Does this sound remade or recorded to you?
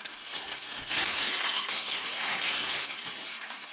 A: remade